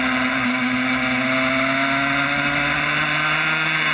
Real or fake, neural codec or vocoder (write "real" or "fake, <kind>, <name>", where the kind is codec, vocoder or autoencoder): real